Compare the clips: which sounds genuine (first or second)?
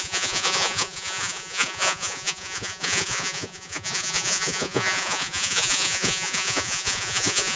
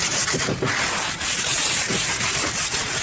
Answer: second